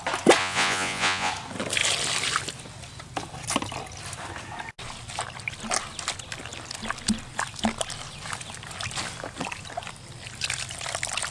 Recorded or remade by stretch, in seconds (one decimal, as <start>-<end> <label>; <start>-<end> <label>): 0.0-0.4 recorded; 0.4-1.3 remade; 1.3-11.3 recorded